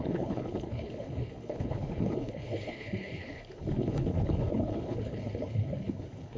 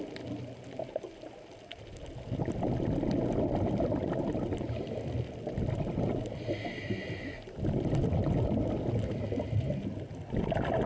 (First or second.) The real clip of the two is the second